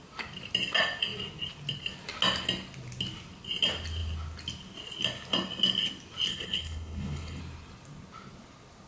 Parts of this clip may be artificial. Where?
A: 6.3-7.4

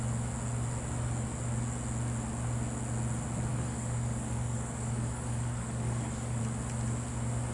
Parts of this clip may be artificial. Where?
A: 3.5-6.4

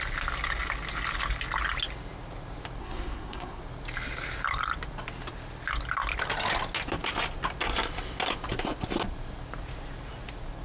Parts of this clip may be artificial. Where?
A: 2.8-3.6

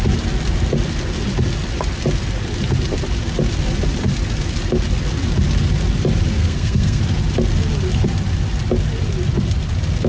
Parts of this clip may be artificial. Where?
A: 6.4-7.0

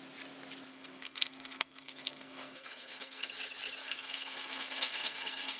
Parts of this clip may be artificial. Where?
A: 0.7-3.3; 3.8-5.6